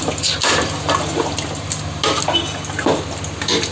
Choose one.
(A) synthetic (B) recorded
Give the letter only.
B